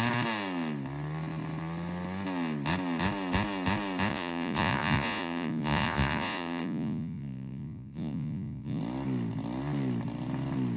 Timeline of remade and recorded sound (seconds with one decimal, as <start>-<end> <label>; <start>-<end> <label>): 0.0-4.1 recorded; 4.1-8.8 remade; 8.8-10.8 recorded